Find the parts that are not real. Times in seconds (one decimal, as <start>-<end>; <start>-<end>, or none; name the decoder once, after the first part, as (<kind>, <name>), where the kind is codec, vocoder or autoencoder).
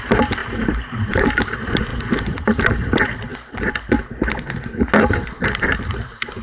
0.4-1.3 (vocoder, BigVGAN v2); 1.9-2.4